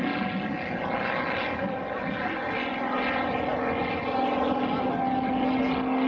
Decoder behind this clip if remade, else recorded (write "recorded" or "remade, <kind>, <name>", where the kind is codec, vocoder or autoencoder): recorded